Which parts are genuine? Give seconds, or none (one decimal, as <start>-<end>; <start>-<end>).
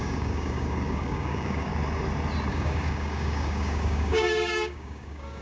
1.7-2.5